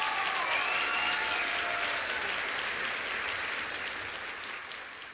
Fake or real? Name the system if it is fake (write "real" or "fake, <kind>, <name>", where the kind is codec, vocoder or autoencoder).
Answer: real